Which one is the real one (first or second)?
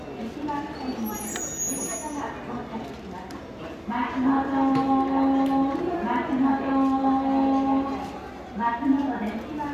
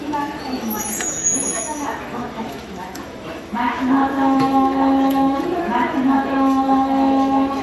first